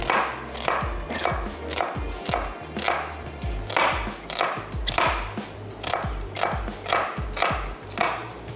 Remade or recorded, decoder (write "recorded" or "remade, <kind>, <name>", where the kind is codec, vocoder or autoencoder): recorded